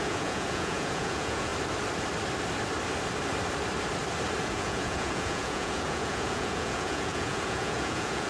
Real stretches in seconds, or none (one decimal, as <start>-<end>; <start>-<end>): 1.5-4.4